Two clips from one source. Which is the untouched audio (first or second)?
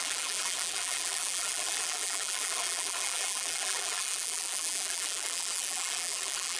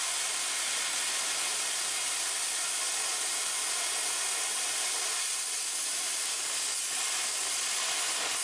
second